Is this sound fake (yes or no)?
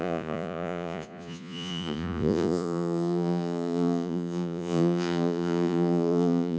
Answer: yes